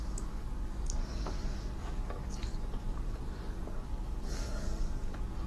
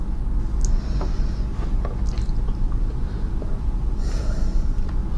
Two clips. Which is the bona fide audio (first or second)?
second